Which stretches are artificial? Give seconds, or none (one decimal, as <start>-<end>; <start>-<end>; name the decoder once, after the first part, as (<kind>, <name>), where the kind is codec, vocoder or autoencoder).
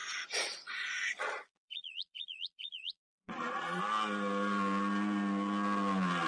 0.0-3.8 (vocoder, Vocos)